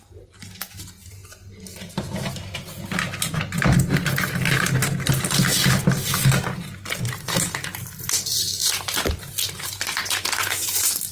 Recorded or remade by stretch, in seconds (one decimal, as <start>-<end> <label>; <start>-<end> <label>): 0.0-11.1 recorded